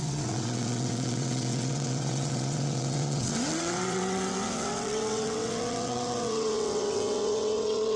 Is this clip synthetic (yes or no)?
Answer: yes